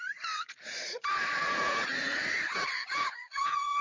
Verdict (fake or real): fake